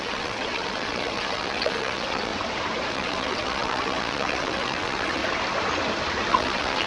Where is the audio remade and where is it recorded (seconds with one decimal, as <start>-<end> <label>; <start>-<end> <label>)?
0.0-2.3 remade; 2.3-2.9 recorded; 2.9-5.2 remade; 5.2-6.3 recorded; 6.3-6.9 remade